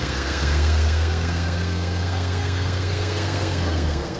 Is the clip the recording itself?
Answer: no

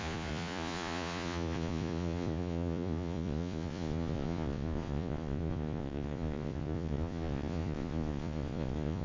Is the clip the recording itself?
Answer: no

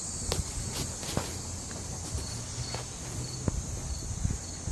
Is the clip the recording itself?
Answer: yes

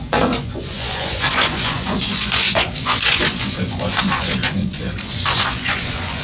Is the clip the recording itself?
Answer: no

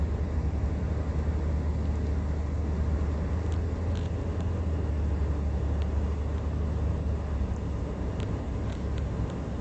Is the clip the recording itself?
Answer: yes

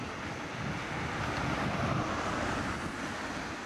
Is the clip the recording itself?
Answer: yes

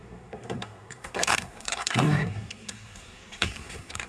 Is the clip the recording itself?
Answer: no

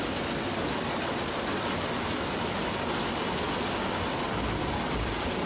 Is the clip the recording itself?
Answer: yes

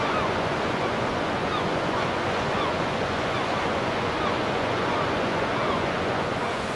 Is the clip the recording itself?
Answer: no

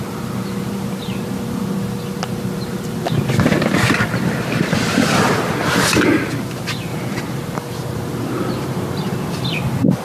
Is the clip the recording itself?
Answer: yes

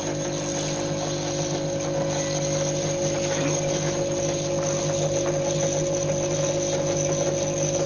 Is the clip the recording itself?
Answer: yes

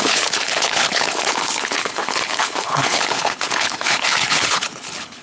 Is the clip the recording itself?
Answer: no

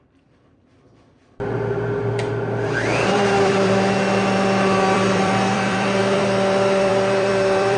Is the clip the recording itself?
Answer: no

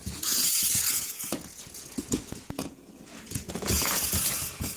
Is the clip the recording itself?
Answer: no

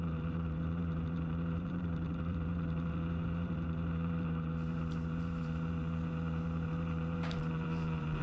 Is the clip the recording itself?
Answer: no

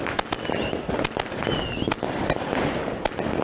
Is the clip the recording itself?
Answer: yes